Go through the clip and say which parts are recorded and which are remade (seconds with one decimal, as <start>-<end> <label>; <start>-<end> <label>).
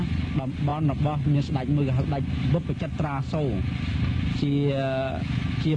0.0-5.8 recorded